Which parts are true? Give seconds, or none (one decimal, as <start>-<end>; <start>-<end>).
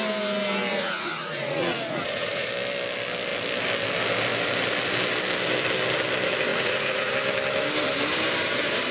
0.0-0.7; 2.5-6.5; 7.1-8.9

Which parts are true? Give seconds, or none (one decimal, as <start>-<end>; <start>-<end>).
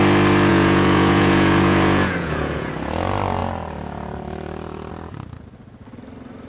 0.0-0.5; 2.7-6.5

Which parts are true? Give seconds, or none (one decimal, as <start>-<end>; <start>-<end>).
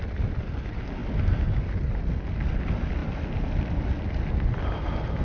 0.0-5.2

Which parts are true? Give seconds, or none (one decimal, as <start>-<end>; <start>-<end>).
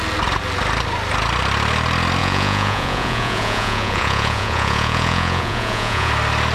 0.0-2.2; 6.1-6.5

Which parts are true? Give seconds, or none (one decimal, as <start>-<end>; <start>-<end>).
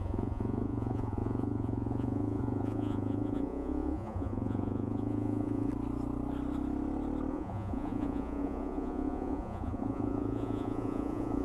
5.7-7.3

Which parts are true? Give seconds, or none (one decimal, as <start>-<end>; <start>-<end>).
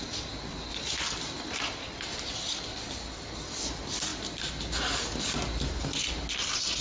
0.0-6.8